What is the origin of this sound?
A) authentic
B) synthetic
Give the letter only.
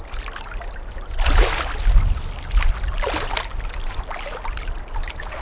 A